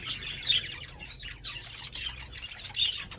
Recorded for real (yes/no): yes